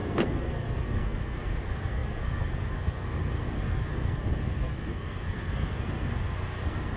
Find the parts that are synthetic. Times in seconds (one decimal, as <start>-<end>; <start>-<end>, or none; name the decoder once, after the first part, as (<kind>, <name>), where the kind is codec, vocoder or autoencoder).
0.0-7.0 (codec, SNAC)

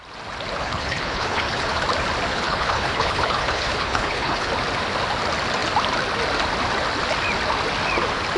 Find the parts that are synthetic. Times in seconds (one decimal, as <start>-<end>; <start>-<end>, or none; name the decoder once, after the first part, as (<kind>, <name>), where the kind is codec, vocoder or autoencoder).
0.6-1.8 (codec, HILCodec); 2.3-4.5

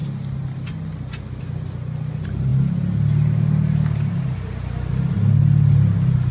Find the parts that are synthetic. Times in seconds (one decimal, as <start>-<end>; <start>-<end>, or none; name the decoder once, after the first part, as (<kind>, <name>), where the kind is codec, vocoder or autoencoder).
none

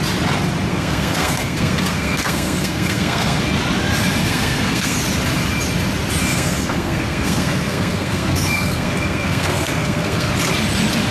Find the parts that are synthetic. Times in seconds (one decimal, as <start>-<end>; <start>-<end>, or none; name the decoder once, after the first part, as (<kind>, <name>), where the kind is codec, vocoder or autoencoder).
0.7-3.4 (codec, SNAC); 4.2-5.0; 6.3-10.3

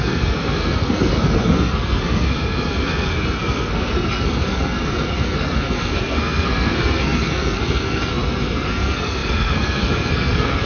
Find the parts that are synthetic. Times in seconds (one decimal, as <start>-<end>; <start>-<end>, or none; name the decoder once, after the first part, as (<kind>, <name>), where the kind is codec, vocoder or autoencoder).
0.0-10.7 (codec, SNAC)

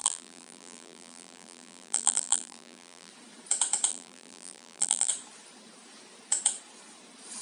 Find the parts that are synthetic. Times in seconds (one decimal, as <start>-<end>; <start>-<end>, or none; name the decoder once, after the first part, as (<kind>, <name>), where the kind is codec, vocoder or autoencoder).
0.0-3.1 (vocoder, BigVGAN v2); 3.9-5.1

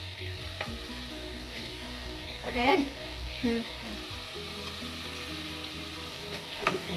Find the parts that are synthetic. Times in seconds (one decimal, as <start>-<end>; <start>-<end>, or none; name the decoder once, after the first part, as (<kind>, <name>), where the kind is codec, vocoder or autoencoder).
0.0-0.4 (codec, DAC); 1.1-3.9; 6.1-7.0

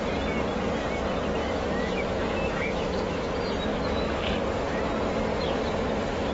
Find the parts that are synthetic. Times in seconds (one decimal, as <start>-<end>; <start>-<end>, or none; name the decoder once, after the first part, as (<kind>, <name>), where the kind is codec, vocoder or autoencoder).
1.4-3.3 (autoencoder, DAC-VAE); 3.7-4.2